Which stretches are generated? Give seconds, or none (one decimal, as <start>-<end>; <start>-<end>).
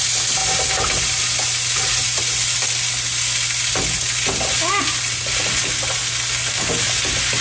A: none